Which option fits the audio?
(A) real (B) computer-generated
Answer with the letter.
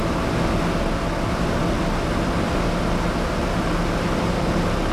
A